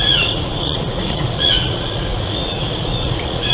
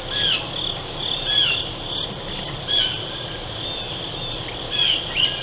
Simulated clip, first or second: first